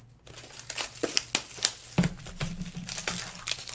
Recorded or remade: recorded